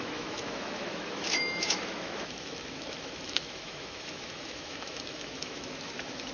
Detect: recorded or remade remade